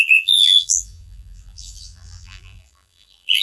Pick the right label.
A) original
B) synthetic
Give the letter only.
B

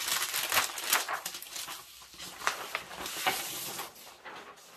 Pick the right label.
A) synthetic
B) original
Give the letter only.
B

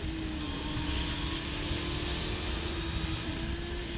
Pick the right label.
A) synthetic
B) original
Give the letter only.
B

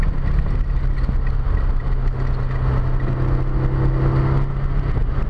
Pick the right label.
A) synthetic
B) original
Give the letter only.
B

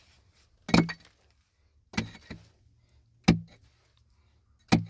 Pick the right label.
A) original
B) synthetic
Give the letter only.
A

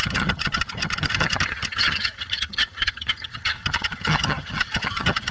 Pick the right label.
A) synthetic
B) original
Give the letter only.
A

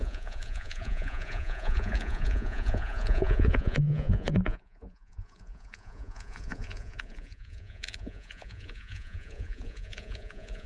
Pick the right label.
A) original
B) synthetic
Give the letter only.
B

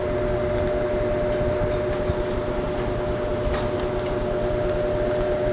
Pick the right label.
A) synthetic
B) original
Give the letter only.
B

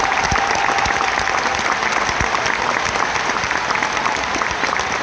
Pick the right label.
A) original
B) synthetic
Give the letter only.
A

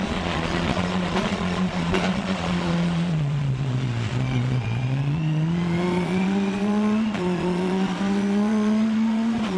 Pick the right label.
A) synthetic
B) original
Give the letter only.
A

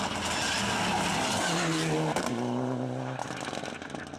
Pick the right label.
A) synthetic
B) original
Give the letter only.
B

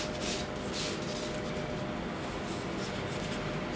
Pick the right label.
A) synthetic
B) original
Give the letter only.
B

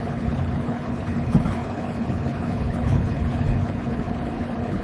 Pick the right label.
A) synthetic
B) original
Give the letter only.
A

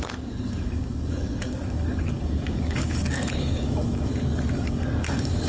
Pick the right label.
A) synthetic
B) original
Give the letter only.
A